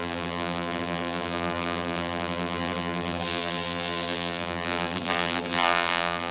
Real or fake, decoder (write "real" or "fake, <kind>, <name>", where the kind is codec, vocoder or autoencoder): fake, vocoder, BigVGAN v2